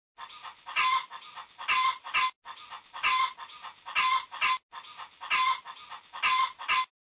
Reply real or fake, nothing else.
real